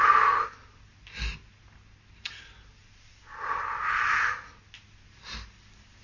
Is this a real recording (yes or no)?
yes